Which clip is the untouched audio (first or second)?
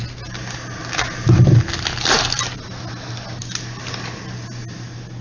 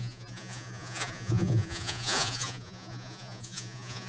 first